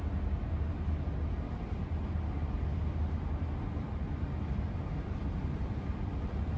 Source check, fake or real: real